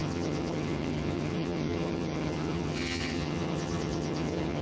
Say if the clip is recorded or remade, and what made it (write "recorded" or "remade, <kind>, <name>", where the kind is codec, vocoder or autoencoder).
remade, vocoder, HiFi-GAN